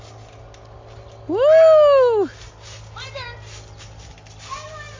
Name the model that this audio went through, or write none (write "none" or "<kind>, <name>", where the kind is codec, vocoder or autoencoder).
none